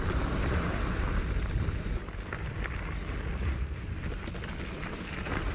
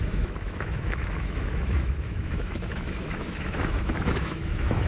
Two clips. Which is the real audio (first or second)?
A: first